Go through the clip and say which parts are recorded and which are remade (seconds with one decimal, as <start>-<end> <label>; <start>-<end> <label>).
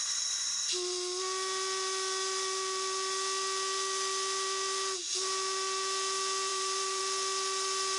0.0-6.5 recorded; 6.5-7.0 remade; 7.0-8.0 recorded